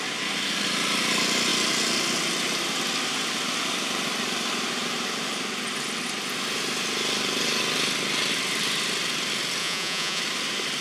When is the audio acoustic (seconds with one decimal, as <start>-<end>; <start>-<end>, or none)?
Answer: 0.0-9.6; 10.2-10.8